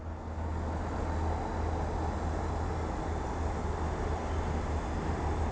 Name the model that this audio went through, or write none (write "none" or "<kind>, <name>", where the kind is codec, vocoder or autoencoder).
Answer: none